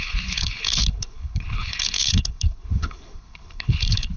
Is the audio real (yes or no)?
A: no